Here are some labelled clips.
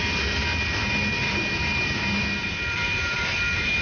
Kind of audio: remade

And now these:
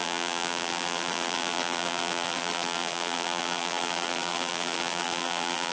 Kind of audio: remade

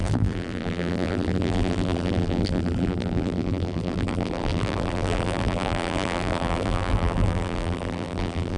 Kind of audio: remade